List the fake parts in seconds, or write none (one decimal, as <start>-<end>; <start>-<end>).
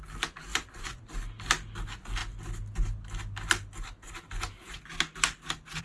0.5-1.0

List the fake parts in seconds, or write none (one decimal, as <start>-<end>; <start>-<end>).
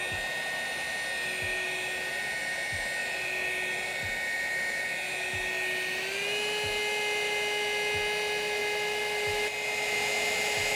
none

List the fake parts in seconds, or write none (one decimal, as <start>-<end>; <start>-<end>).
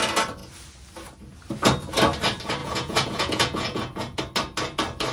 2.6-4.2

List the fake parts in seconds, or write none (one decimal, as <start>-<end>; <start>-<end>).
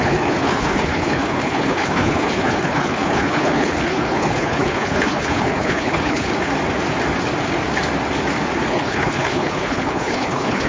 0.0-6.3; 8.7-10.7